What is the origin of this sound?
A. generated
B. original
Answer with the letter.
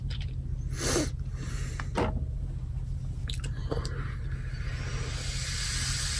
B